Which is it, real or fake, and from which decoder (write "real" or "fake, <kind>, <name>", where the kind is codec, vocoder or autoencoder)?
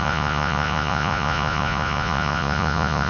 fake, vocoder, Vocos